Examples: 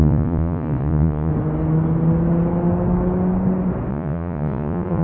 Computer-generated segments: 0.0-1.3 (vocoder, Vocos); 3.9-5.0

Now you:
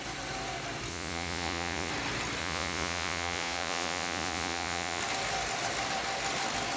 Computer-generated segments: 0.9-1.9 (vocoder, Vocos); 2.4-5.0

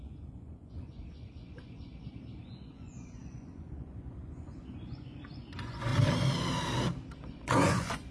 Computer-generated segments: 0.0-1.9 (vocoder, Vocos); 2.4-5.9; 7.2-8.1

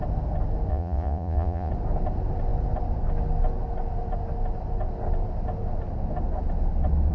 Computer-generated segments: 0.7-1.7 (vocoder, Vocos)

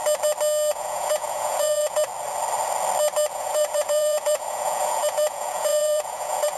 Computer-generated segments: 0.7-2.1 (vocoder, Vocos); 3.3-6.6

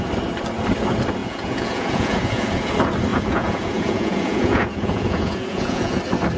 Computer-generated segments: 1.2-2.7 (vocoder, Vocos); 3.1-6.0

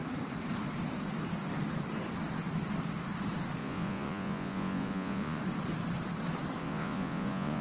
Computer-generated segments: 3.6-5.4 (vocoder, Vocos); 6.6-7.6

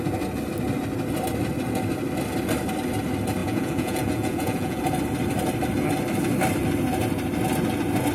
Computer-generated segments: 3.4-4.8 (vocoder, Vocos)